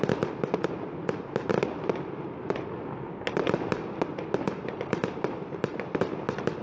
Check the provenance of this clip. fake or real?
real